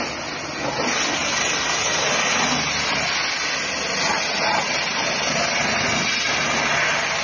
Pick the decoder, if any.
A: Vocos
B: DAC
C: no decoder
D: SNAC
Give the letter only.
C